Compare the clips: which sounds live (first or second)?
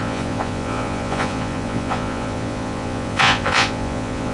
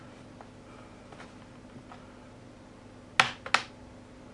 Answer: second